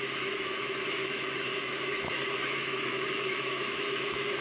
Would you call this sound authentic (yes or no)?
no